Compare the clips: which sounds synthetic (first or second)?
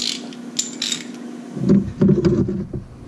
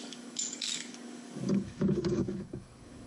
second